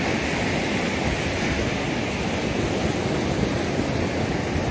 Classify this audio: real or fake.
real